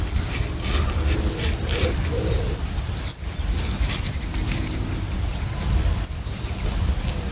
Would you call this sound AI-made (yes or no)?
no